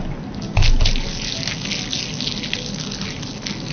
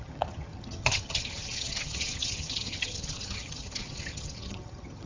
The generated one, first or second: second